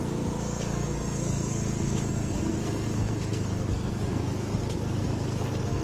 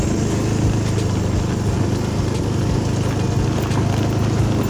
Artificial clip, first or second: first